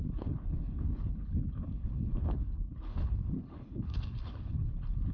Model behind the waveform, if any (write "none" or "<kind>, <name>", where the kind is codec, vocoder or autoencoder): codec, HILCodec